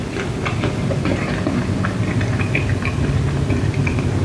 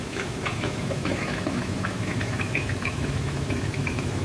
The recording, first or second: first